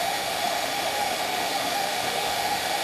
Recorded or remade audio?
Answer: remade